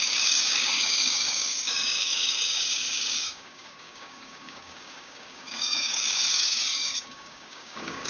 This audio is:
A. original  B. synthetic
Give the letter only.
B